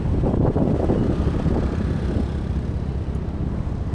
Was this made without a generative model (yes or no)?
yes